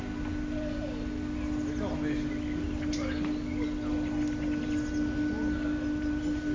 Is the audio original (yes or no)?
yes